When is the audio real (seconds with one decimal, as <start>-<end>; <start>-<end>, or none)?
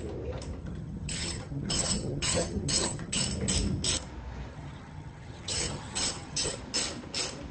0.0-0.6; 3.2-4.5; 6.6-7.5